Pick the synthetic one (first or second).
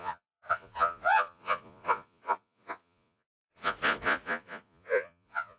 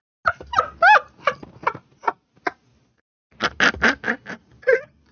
first